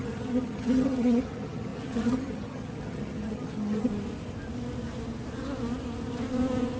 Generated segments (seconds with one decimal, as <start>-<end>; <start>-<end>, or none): 0.0-3.9